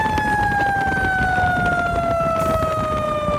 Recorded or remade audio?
recorded